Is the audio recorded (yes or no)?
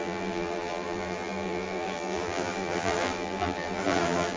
no